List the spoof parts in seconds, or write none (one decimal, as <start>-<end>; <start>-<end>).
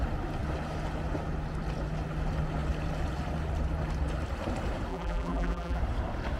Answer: 4.9-5.8